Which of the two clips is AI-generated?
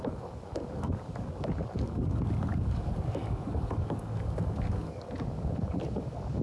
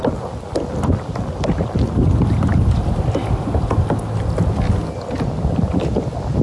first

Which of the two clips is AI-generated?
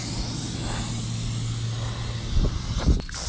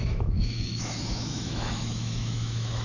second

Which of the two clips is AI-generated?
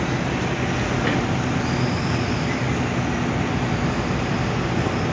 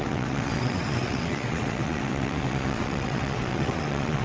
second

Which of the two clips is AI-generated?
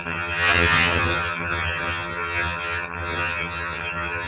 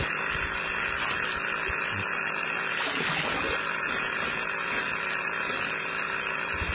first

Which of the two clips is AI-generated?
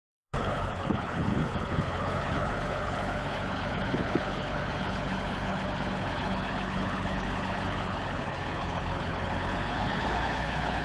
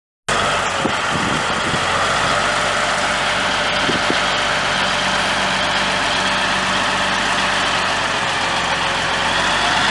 first